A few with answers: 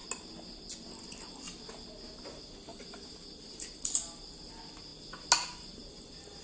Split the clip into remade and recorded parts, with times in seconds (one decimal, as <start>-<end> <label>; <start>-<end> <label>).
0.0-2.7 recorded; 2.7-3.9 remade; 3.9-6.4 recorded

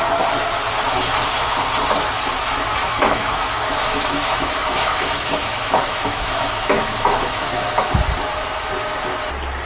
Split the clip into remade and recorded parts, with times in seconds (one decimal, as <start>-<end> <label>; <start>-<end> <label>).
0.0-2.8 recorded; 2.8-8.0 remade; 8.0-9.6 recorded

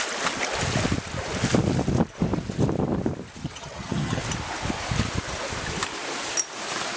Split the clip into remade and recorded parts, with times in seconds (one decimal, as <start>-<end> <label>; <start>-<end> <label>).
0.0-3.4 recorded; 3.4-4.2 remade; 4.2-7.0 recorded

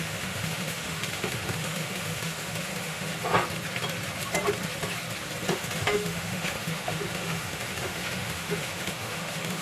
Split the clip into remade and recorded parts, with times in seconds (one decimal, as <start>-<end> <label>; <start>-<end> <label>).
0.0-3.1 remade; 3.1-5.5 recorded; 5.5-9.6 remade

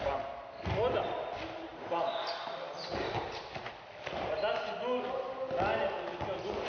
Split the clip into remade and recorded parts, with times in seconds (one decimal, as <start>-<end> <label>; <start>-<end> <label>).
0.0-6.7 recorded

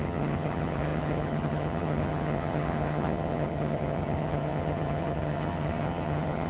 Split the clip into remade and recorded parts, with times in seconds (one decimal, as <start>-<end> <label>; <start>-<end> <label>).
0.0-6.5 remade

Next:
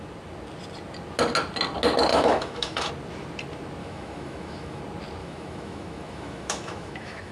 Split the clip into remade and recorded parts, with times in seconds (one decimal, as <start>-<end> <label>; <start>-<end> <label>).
0.0-2.1 recorded; 2.1-2.9 remade; 2.9-3.8 recorded; 3.8-4.8 remade; 4.8-5.2 recorded; 5.2-7.3 remade